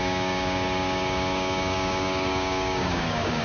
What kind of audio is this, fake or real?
fake